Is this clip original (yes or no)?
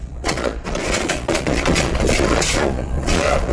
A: no